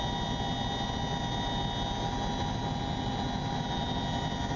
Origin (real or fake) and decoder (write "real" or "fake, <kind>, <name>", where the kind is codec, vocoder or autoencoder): real